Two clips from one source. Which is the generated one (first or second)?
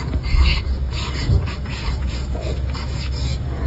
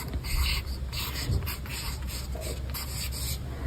first